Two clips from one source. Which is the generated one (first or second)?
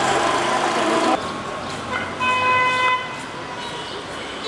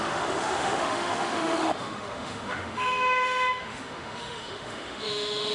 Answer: second